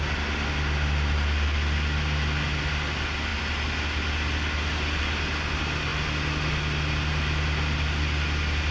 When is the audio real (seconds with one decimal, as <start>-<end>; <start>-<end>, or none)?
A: 0.0-8.7